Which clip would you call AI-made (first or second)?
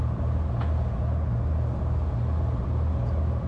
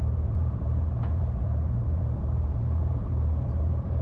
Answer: second